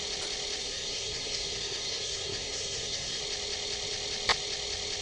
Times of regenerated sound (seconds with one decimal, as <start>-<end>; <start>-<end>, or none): 0.6-3.2